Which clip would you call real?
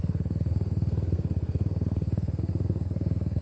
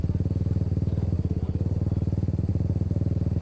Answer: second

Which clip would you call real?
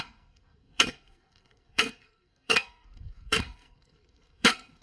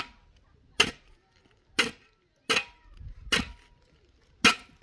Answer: second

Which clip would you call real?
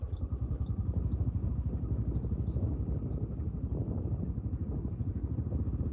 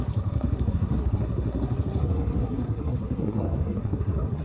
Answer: first